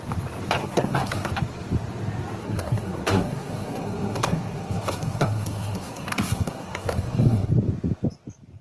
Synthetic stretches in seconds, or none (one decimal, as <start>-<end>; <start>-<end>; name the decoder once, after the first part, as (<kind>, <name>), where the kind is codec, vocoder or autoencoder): 0.6-1.3 (codec, SNAC); 2.4-7.5